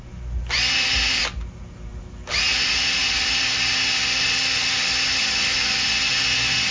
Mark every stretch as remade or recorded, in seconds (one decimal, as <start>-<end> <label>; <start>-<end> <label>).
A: 0.0-6.7 recorded